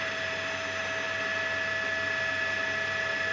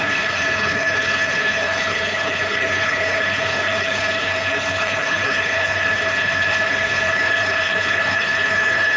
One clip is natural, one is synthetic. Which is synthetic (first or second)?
second